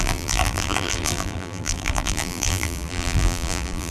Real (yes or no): no